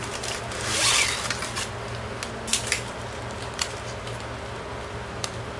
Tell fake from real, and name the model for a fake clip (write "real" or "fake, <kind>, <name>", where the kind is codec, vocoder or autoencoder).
real